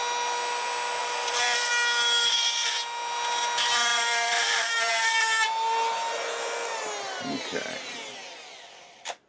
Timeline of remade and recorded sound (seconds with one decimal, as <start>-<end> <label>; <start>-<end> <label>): 0.0-1.0 recorded; 1.0-1.7 remade; 1.7-3.9 recorded; 3.9-4.9 remade; 4.9-9.3 recorded